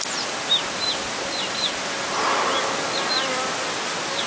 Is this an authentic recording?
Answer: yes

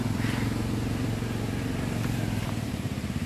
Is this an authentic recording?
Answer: no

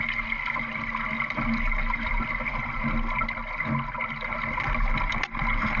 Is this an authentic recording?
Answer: yes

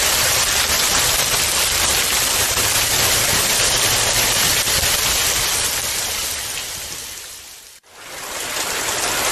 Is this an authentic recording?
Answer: yes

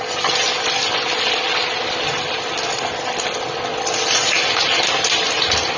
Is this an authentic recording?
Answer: yes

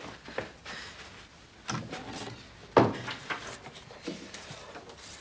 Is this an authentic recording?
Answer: yes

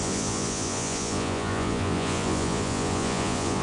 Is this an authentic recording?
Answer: no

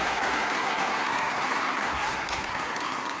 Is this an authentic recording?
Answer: no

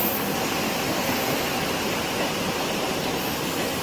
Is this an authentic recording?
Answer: yes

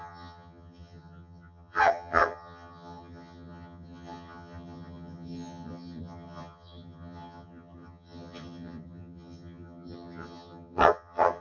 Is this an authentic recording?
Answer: no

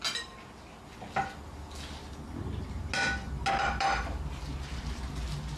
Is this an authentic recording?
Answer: yes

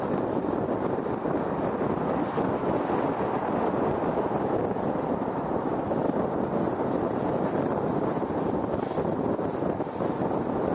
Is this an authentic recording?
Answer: yes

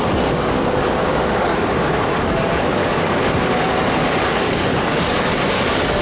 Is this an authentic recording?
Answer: no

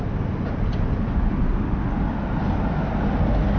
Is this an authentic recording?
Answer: yes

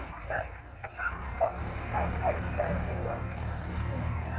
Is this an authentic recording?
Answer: no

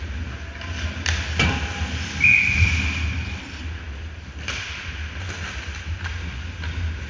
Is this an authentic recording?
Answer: yes